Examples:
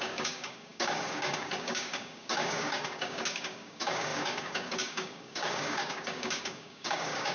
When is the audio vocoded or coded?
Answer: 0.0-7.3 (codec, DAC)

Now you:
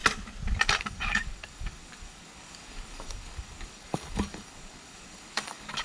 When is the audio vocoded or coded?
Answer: 0.8-5.8 (codec, DAC)

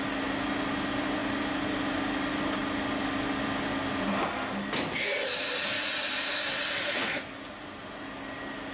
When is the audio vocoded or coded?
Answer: none

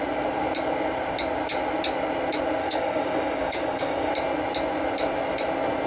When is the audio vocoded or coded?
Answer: 2.6-4.1 (codec, DAC)

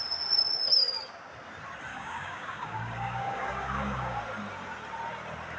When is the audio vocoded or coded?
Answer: 1.9-4.2 (codec, DAC)